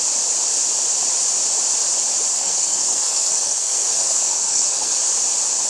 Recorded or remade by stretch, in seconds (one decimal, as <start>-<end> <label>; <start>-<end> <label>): 0.0-2.3 recorded; 2.3-5.0 remade; 5.0-5.7 recorded